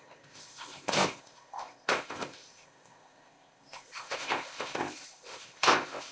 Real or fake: fake